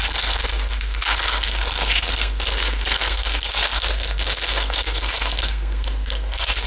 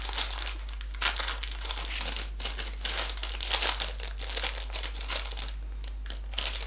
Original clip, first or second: second